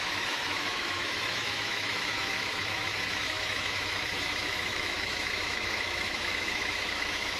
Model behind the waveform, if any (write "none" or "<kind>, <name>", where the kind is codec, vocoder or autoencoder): autoencoder, DAC-VAE